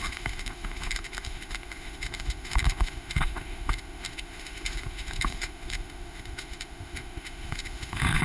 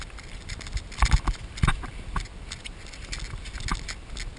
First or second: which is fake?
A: first